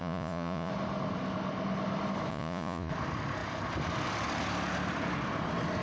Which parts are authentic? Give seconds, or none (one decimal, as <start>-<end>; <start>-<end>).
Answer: 0.7-2.3; 2.9-5.8